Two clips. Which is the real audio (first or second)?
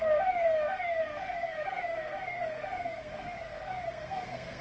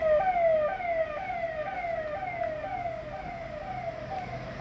second